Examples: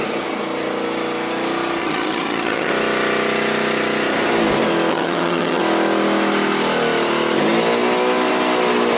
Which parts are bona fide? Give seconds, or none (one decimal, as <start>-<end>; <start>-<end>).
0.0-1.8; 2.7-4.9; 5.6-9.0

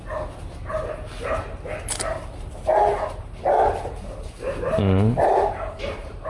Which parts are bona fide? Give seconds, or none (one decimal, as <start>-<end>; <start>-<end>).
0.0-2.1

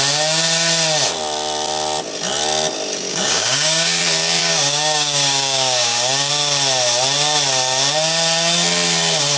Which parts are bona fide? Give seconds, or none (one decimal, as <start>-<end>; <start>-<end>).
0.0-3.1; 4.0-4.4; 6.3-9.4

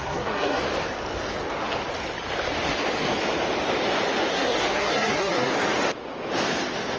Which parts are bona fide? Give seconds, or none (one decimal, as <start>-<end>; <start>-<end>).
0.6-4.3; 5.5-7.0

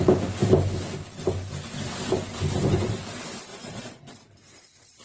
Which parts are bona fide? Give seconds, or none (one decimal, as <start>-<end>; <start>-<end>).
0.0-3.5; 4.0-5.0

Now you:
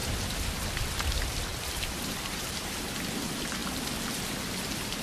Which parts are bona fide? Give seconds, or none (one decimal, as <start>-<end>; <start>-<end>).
3.6-4.4